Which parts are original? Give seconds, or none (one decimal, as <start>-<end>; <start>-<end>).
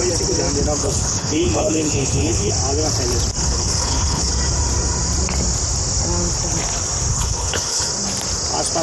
0.0-0.8; 2.5-3.4; 4.3-7.1; 7.9-8.8